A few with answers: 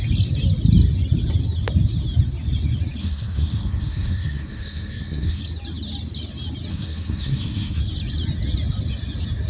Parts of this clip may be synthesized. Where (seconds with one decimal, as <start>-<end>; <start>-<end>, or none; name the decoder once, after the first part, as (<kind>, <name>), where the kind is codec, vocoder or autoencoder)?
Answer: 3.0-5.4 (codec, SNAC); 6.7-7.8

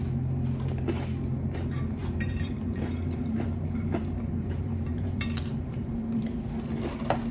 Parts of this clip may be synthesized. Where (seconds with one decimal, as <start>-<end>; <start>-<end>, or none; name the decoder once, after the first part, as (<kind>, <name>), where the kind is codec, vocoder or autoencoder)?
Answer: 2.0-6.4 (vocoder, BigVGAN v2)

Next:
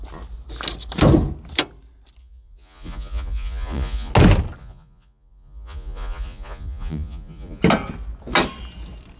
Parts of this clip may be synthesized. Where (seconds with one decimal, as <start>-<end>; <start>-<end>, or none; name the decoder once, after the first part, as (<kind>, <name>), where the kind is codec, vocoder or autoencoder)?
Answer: 2.2-4.1 (vocoder, Vocos); 4.6-7.6